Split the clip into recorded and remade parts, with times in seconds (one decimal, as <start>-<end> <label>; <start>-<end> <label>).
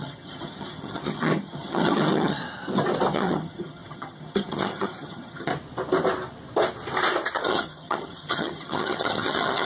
0.0-2.4 remade; 2.4-3.1 recorded; 3.1-5.5 remade; 5.5-7.3 recorded; 7.3-9.6 remade